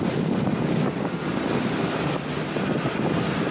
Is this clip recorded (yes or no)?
yes